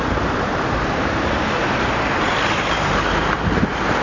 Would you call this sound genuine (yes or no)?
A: no